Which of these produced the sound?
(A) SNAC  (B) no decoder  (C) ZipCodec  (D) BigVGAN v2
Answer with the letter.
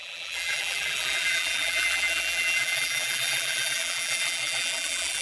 D